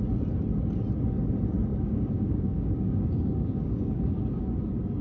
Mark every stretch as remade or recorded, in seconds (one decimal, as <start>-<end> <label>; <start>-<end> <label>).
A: 0.0-1.7 recorded; 1.7-4.4 remade; 4.4-5.0 recorded